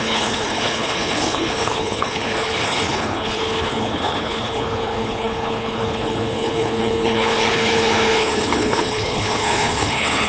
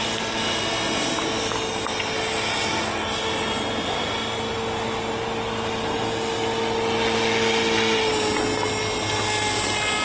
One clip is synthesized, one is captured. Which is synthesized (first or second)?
first